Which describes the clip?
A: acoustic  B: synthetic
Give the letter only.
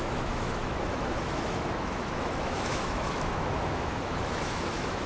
B